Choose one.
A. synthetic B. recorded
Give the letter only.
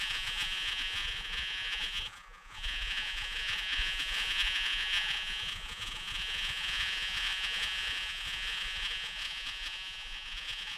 A